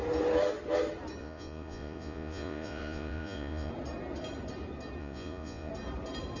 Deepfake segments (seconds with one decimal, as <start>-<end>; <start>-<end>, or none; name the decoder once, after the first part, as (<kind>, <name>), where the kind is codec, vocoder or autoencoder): 1.2-3.7 (vocoder, Vocos); 5.0-5.7